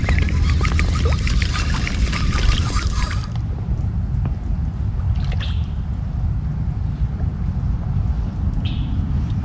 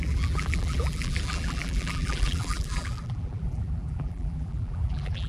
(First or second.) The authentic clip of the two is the first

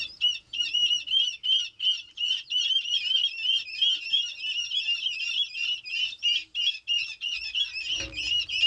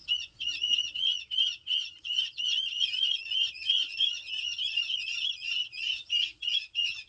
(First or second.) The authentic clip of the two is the first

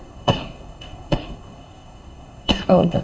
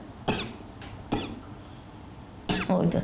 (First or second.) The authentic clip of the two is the second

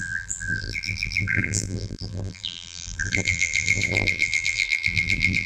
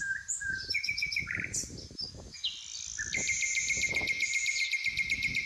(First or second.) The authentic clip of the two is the second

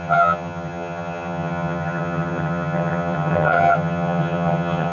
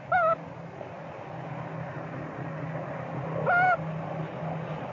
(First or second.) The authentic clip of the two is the second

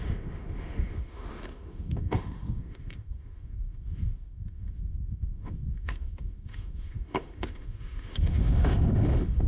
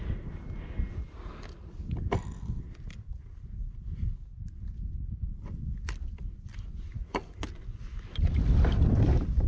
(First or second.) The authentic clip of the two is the second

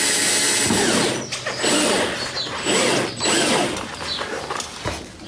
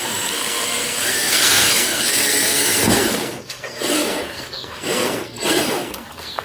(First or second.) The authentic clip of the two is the first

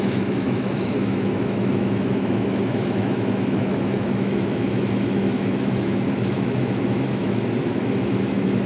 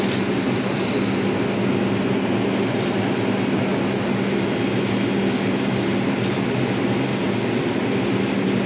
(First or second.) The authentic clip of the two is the second